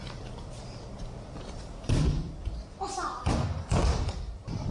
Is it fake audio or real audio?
fake